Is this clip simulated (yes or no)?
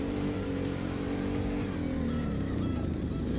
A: yes